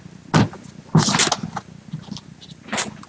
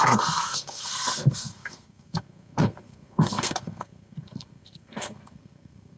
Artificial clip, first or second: second